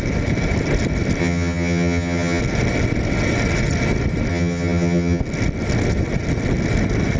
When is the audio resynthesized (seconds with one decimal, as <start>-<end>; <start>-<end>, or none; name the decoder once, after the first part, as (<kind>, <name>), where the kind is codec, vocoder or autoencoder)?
1.2-2.4 (vocoder, HiFi-GAN); 4.3-5.2